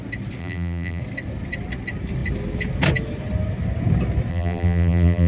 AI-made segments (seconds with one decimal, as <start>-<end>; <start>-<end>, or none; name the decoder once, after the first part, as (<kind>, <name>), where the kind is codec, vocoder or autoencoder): 0.4-1.0 (vocoder, BigVGAN v2); 4.3-5.3